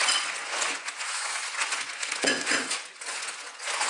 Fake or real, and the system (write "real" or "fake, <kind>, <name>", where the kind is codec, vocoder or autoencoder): fake, vocoder, Vocos